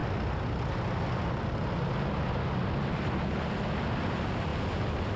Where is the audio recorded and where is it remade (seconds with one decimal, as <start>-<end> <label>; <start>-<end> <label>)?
0.0-5.2 recorded